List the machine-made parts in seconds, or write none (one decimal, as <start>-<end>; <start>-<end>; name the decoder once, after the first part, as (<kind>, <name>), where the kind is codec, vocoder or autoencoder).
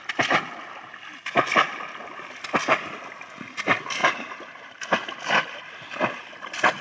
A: 4.0-4.8 (vocoder, BigVGAN v2)